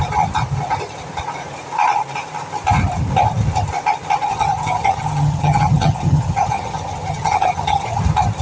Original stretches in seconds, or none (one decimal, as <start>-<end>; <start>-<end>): 0.0-4.3; 8.0-8.4